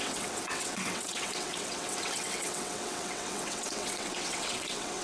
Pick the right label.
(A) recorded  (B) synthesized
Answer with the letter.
B